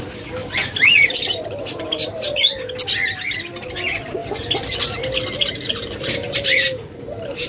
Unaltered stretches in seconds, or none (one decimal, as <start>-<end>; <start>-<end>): 0.0-0.4; 2.4-6.2